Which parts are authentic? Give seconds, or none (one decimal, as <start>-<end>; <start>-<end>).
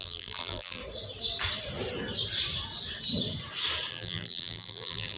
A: 0.8-3.9